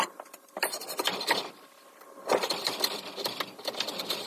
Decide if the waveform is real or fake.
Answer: real